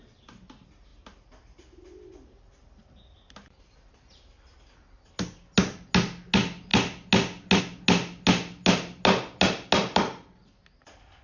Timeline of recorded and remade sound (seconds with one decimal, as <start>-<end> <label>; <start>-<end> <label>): 0.0-11.2 recorded